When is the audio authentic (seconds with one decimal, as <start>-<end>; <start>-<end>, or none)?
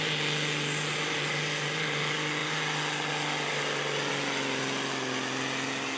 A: 0.0-6.0